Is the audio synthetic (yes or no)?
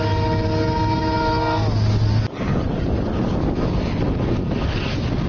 no